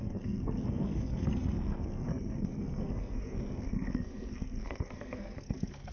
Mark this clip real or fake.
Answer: fake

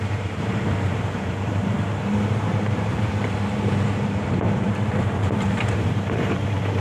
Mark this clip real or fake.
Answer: fake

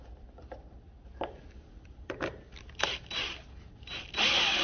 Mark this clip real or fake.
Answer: real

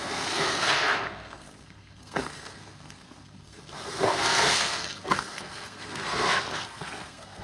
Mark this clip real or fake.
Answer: fake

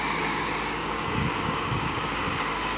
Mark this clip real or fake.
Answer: fake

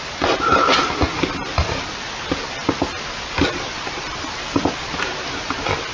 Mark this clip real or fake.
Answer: real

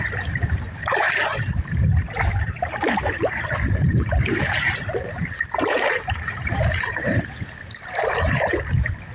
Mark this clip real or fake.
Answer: fake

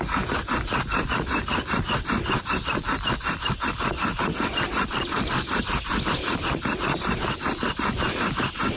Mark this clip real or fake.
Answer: real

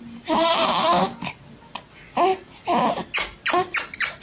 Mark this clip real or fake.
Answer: real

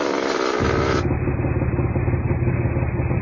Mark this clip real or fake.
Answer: real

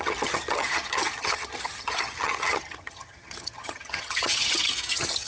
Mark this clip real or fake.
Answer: fake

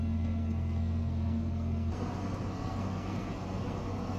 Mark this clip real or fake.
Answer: fake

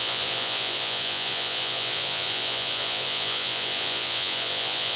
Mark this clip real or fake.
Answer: fake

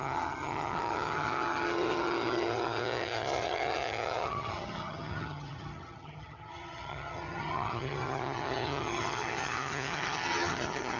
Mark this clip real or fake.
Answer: fake